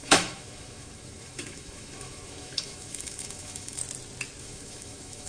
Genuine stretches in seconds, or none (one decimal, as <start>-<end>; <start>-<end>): 3.8-4.4